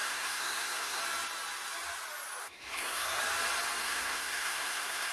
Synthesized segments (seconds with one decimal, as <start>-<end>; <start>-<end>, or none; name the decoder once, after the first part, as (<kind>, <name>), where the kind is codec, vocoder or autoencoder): 0.0-1.0 (codec, SNAC); 2.4-3.2; 3.8-5.1

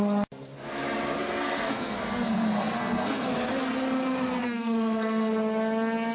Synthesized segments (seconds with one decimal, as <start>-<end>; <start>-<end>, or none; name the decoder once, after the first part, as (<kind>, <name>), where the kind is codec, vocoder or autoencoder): 1.2-3.3 (codec, SNAC); 4.4-5.3

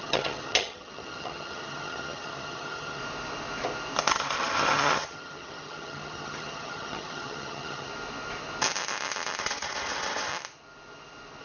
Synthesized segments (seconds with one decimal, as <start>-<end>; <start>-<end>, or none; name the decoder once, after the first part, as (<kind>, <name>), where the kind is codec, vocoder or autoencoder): 0.0-3.0 (vocoder, HiFi-GAN); 4.1-7.9; 9.4-10.3

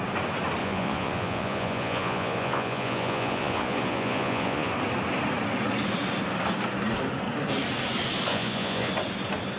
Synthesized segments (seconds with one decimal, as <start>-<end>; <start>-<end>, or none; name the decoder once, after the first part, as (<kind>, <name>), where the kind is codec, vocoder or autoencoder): 0.6-4.7 (vocoder, Vocos); 8.3-8.9

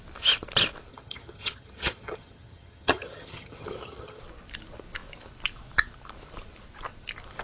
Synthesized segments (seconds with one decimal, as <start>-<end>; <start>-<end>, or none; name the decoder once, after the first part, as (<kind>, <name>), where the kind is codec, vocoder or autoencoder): 0.9-4.2 (vocoder, HiFi-GAN)

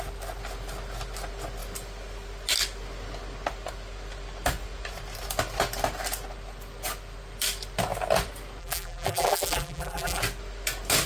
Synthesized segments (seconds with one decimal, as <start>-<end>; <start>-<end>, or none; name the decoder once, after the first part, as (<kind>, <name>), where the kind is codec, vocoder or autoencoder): 8.6-10.2 (vocoder, BigVGAN v2)